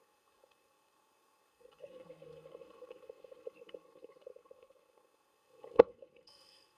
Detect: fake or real fake